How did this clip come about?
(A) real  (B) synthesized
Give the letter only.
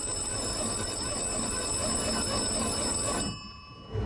A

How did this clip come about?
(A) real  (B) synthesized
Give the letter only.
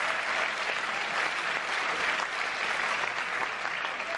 A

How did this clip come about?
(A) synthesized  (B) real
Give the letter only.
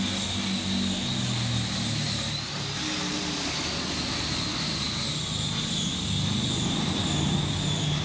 B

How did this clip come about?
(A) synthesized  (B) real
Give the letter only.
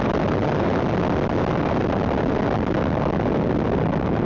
B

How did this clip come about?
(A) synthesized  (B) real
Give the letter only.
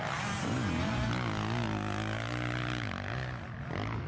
B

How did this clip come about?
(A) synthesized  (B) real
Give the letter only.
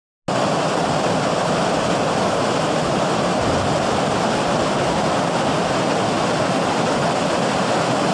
B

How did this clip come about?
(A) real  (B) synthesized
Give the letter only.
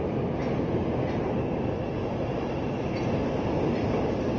A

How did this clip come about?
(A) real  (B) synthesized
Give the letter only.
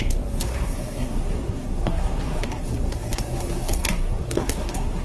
B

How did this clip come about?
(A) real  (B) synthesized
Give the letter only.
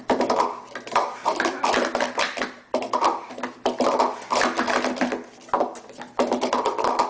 A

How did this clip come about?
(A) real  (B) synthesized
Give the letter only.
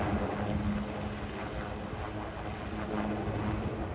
A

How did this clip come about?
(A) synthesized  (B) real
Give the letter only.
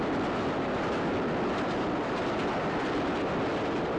B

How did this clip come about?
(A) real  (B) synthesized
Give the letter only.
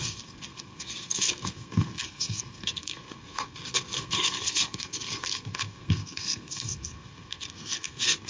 B